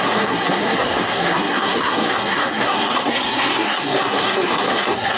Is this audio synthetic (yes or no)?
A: yes